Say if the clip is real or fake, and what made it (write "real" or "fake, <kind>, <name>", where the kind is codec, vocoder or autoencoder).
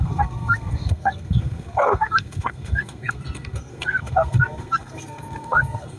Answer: fake, codec, SNAC